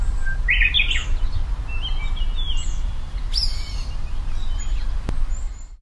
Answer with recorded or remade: recorded